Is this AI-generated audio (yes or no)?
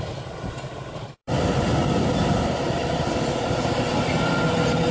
yes